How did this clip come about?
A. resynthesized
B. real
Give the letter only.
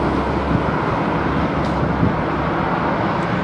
B